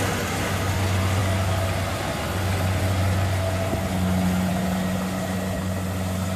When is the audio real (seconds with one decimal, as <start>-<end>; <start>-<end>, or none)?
0.0-6.4